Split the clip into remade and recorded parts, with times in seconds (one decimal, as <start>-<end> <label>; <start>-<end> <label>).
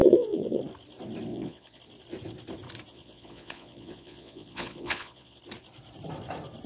0.0-0.6 remade; 0.6-1.3 recorded; 1.3-1.8 remade; 1.8-2.9 recorded; 2.9-5.4 remade; 5.4-6.7 recorded